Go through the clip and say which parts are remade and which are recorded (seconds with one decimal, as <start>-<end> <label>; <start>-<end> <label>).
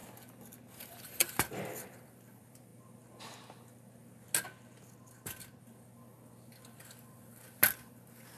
0.0-0.8 recorded; 0.8-2.7 remade; 2.7-7.3 recorded; 7.3-8.4 remade